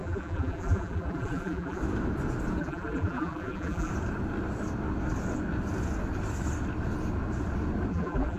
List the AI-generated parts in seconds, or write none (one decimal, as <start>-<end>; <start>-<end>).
0.0-1.8; 2.6-3.9; 7.9-8.4